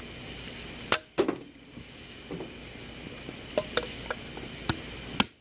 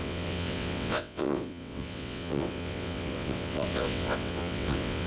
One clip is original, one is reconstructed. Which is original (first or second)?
first